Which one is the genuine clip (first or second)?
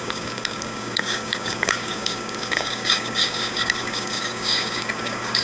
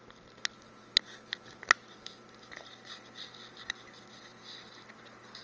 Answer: second